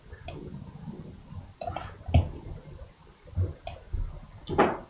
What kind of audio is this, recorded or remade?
recorded